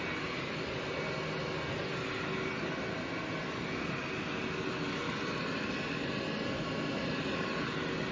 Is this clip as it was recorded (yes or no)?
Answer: yes